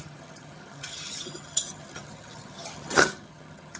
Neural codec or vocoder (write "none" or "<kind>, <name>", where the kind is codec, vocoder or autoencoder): vocoder, HiFi-GAN